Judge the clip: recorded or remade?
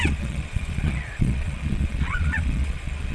remade